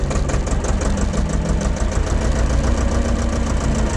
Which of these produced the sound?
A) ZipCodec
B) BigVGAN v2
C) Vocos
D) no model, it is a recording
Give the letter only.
D